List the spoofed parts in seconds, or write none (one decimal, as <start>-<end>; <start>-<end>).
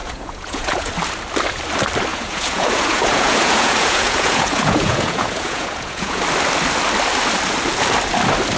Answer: 0.0-0.9; 2.1-6.2